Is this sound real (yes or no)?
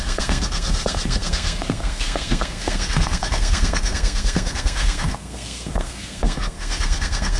no